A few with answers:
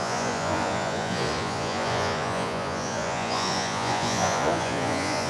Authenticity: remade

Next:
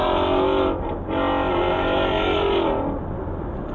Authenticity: recorded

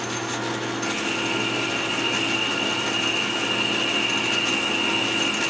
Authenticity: recorded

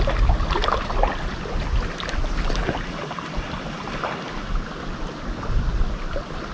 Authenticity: recorded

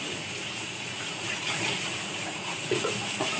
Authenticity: remade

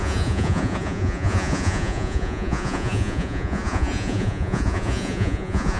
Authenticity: remade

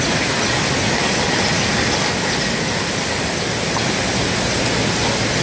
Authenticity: recorded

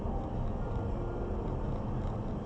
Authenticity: recorded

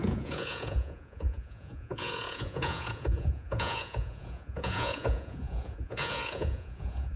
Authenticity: remade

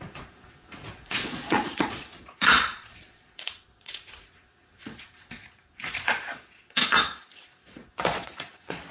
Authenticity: remade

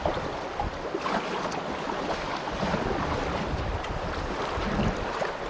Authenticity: recorded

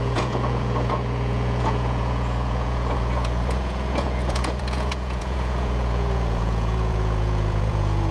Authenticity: remade